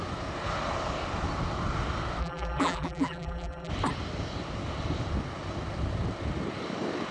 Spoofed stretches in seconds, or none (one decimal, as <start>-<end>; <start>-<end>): 2.2-3.7